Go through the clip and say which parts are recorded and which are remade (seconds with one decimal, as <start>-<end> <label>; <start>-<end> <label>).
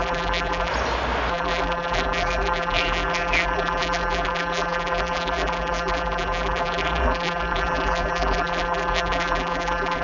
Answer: 0.0-0.7 remade; 0.7-1.3 recorded; 1.3-10.0 remade